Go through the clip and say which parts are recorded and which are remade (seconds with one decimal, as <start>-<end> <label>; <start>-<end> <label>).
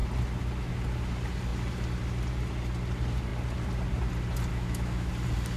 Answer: 0.0-4.5 recorded; 4.5-5.1 remade; 5.1-5.6 recorded